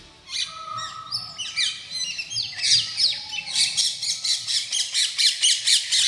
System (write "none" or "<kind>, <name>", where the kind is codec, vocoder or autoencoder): none